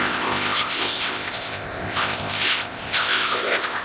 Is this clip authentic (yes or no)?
no